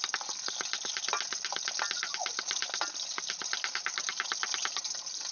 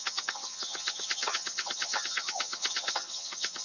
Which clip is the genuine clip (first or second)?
first